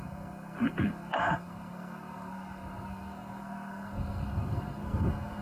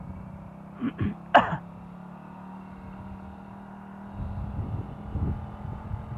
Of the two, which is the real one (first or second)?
second